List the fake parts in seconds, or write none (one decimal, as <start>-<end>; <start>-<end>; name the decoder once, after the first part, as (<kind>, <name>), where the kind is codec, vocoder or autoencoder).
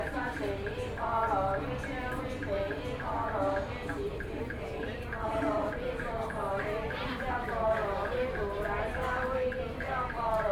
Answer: 3.8-7.3 (vocoder, BigVGAN v2)